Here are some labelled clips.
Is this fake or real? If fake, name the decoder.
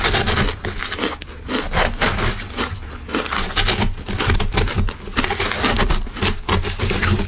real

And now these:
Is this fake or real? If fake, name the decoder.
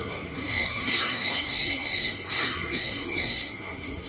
fake, codec, SNAC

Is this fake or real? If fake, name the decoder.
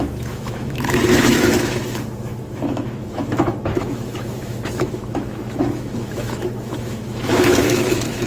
fake, autoencoder, DAC-VAE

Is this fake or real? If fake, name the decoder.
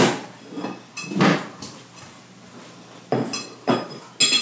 real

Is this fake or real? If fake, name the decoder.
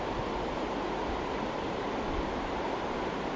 real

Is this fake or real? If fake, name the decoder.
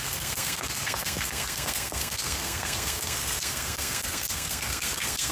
fake, codec, SNAC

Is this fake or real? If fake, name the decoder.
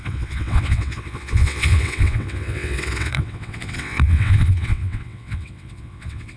fake, vocoder, WaveNeXt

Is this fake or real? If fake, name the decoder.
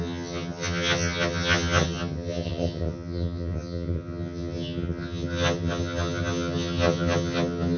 fake, vocoder, HiFi-GAN